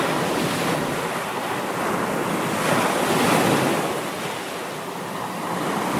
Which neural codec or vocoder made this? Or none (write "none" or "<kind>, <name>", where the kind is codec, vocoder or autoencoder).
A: none